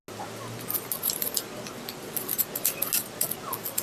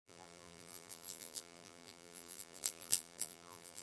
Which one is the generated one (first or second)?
second